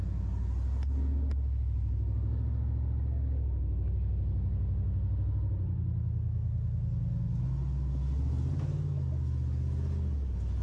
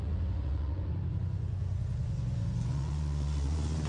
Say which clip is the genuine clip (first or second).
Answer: first